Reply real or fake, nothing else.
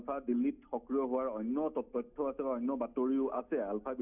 real